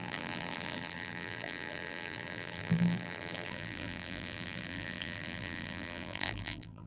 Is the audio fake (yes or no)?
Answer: yes